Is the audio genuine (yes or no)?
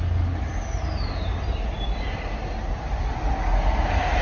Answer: yes